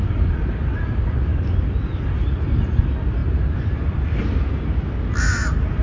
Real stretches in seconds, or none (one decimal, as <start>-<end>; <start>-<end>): 0.0-3.2; 4.2-5.8